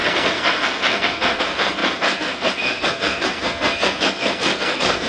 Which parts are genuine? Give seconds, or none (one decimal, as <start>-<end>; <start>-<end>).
none